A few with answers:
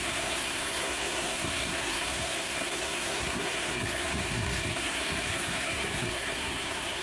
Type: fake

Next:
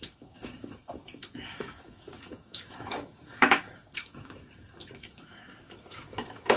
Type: fake